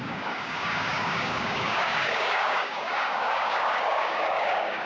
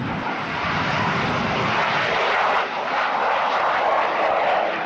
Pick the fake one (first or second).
first